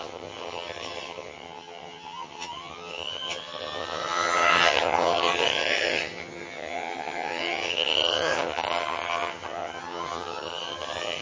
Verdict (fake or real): fake